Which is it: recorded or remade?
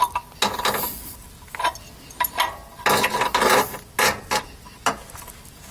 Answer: recorded